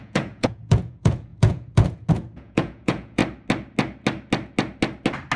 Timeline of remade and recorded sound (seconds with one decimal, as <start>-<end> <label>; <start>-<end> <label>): 0.0-3.2 remade; 3.2-5.4 recorded